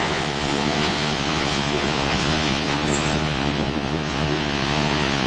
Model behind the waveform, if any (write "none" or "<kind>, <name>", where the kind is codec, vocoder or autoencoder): vocoder, Vocos